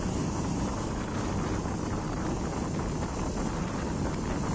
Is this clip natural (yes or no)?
yes